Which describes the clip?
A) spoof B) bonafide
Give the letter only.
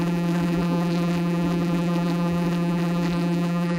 A